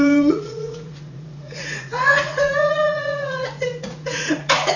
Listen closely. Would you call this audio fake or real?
fake